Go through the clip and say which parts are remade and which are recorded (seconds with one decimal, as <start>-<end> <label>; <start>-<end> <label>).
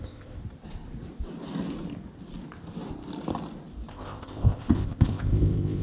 0.0-0.4 remade; 0.4-3.9 recorded; 3.9-5.8 remade